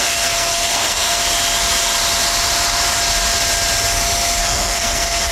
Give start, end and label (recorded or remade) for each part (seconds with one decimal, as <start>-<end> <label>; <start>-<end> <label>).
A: 0.0-1.2 remade; 1.2-4.4 recorded; 4.4-5.3 remade